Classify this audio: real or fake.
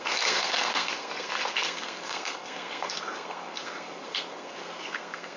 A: fake